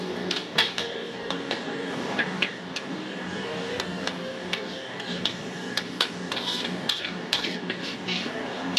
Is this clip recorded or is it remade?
remade